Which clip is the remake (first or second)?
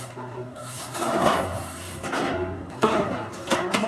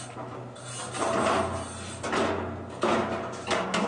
first